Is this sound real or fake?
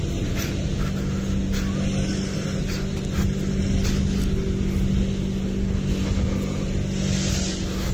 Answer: real